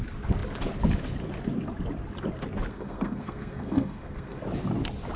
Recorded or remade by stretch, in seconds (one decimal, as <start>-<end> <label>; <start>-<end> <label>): 0.0-2.7 recorded; 2.7-4.4 remade; 4.4-5.2 recorded